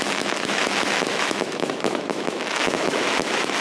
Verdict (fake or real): fake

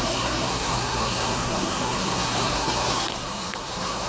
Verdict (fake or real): fake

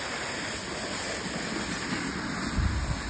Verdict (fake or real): real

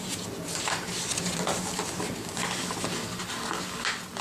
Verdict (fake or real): real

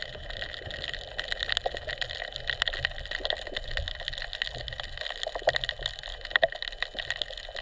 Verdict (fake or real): real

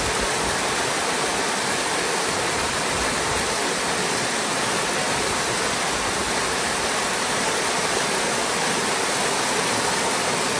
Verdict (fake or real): real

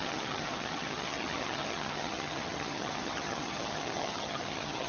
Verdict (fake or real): fake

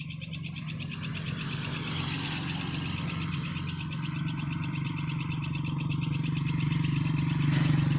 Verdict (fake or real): real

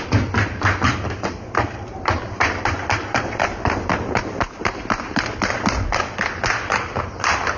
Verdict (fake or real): real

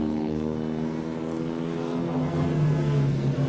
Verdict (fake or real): fake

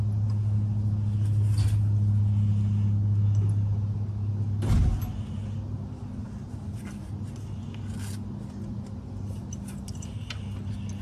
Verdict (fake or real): real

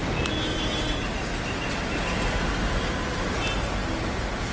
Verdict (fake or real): real